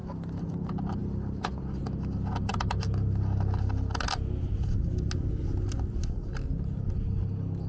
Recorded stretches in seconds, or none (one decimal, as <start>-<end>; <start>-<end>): 0.0-7.7